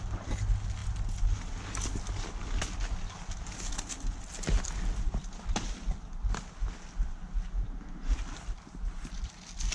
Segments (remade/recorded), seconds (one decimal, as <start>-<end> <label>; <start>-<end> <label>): 0.0-9.7 recorded